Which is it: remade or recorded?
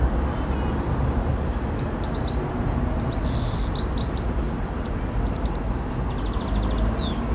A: recorded